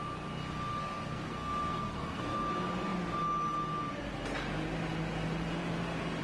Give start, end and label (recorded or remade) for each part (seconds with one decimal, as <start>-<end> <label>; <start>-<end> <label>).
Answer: 0.0-0.7 recorded; 0.7-2.5 remade; 2.5-6.2 recorded